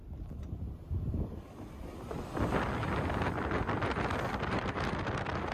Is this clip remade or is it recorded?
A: recorded